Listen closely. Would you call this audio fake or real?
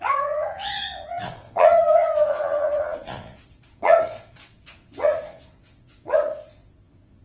fake